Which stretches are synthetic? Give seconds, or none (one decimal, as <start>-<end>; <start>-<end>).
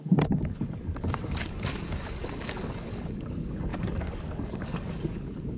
0.0-5.6